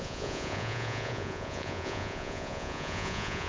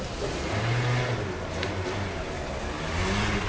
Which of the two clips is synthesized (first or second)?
first